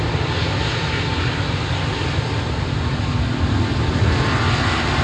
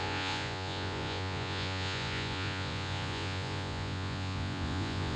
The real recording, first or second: first